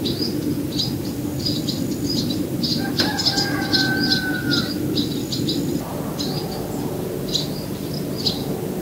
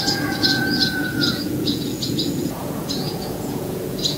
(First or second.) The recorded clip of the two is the first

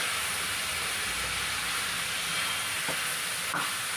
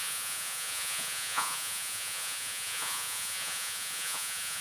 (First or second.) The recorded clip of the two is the first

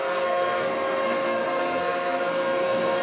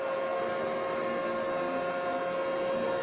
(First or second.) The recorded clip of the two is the second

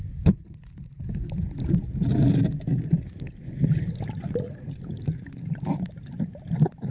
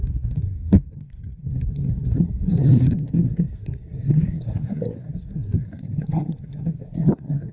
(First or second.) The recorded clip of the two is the first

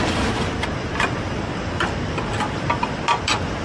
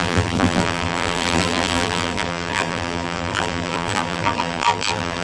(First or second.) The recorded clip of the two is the first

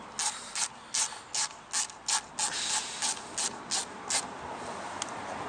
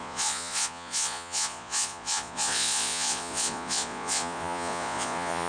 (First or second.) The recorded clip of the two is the first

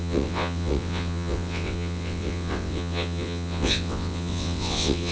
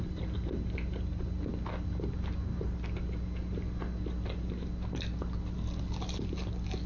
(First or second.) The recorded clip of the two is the second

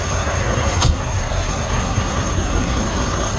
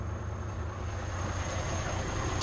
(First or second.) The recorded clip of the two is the second